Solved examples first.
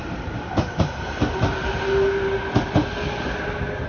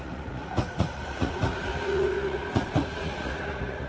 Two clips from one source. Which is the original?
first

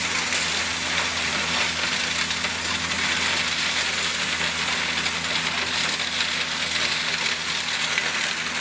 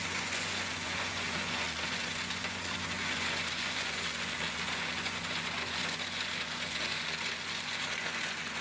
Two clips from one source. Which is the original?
first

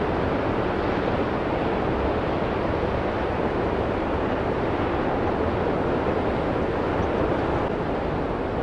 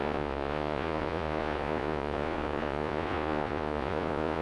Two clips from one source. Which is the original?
first